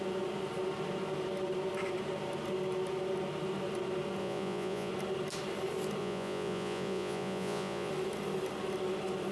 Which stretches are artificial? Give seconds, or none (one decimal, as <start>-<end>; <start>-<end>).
4.2-4.9; 6.0-7.9